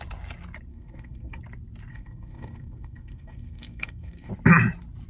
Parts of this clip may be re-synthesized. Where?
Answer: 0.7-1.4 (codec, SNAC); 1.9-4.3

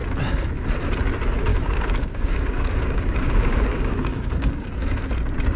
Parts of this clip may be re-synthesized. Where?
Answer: 1.5-4.7 (codec, DAC)

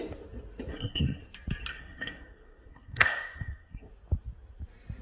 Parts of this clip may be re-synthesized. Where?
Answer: 0.7-1.2 (codec, SNAC); 1.7-3.9

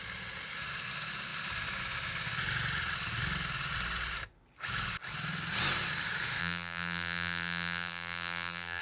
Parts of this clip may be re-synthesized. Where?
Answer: 6.4-8.8 (vocoder, BigVGAN v2)

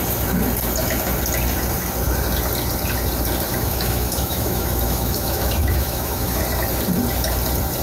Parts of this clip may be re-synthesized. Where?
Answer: 3.5-6.4 (autoencoder, DAC-VAE)